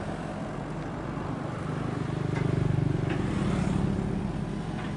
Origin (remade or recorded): recorded